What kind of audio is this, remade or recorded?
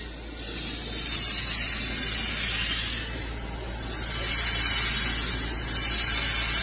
recorded